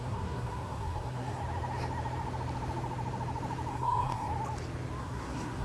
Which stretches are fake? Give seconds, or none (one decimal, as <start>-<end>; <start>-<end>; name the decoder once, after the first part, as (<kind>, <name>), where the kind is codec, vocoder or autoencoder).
0.0-1.4 (codec, SNAC); 3.7-4.3; 5.0-5.6